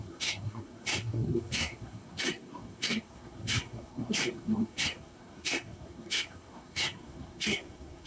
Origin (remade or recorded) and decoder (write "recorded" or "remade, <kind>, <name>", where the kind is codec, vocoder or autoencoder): remade, codec, SNAC